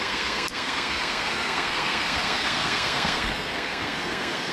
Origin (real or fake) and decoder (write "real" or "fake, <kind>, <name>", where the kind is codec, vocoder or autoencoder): fake, codec, SNAC